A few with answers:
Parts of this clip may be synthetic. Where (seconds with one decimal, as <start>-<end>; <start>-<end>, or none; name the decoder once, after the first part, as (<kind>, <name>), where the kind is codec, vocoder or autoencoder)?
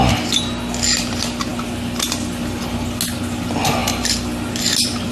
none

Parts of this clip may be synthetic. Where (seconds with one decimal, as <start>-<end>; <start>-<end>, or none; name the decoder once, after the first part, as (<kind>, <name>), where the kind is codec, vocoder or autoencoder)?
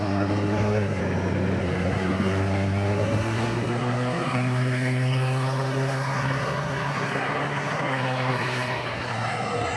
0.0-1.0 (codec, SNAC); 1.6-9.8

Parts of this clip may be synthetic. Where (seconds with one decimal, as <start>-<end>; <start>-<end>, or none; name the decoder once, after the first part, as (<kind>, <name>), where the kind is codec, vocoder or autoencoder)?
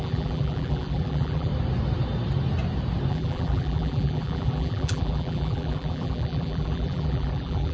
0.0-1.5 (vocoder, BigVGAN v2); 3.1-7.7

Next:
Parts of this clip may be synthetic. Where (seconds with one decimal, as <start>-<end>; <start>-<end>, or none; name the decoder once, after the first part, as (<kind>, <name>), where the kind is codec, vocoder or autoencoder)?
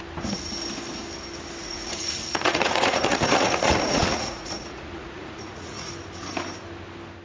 1.6-5.9 (vocoder, Vocos)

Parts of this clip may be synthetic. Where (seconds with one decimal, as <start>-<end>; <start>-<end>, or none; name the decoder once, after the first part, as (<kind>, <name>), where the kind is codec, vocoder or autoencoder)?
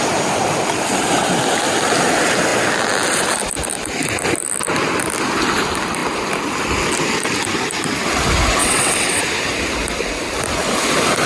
8.6-9.2 (vocoder, WaveNeXt)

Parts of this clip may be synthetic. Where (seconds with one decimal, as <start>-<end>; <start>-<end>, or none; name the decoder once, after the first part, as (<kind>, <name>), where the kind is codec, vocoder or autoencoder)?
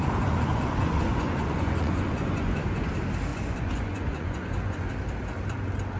0.0-2.9 (vocoder, Vocos); 3.3-4.9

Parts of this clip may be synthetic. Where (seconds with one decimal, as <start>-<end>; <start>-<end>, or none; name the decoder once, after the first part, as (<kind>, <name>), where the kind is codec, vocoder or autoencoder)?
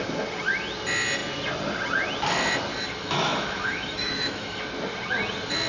3.0-4.6 (autoencoder, DAC-VAE)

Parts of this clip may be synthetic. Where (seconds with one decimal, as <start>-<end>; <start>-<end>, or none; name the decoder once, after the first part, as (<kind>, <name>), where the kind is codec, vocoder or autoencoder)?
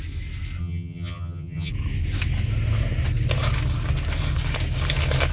0.6-1.7 (vocoder, HiFi-GAN)